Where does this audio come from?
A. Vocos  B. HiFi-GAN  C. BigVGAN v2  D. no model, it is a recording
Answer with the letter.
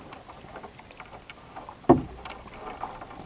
D